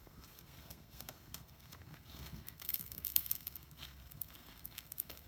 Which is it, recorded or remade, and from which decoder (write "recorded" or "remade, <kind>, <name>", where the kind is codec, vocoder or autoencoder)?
remade, codec, SNAC